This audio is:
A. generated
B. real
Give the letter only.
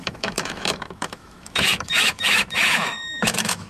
A